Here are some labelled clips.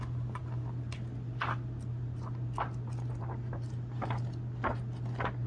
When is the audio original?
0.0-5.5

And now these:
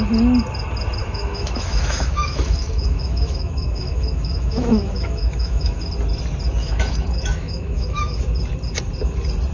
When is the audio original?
0.0-1.0; 5.8-6.6; 8.2-9.5

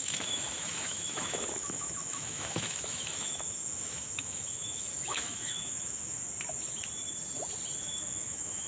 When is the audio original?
6.2-7.8

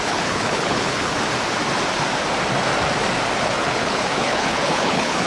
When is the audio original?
1.1-3.4

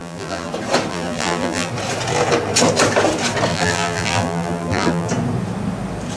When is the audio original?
0.5-0.9; 1.7-3.5; 5.1-6.2

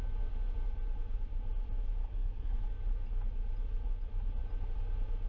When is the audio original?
0.0-2.0; 2.6-5.3

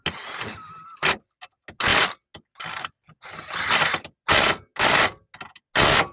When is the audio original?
0.0-6.1

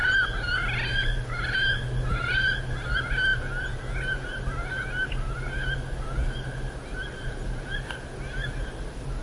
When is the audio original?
0.0-9.2